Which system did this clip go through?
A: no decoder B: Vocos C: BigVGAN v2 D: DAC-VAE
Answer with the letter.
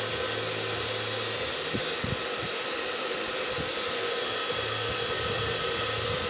A